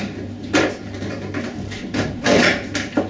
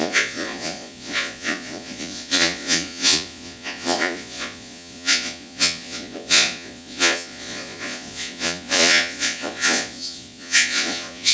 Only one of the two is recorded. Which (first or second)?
first